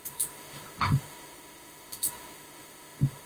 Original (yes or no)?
no